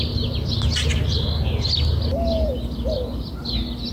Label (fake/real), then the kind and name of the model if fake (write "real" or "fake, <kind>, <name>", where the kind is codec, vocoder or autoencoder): real